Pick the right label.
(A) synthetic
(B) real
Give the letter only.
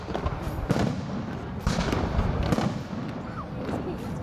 B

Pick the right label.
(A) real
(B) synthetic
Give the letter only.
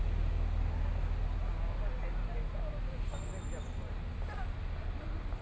A